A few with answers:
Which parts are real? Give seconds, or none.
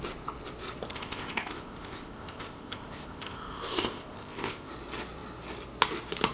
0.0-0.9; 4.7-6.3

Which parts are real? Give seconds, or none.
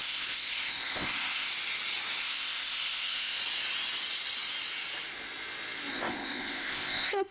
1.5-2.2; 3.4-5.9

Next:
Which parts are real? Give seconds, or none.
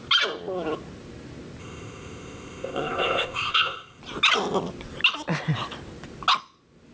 0.0-1.6; 4.0-6.9